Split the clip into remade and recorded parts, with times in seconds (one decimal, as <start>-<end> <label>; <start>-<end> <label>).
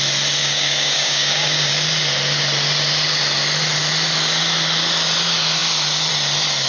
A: 0.0-0.4 recorded; 0.4-1.7 remade; 1.7-6.7 recorded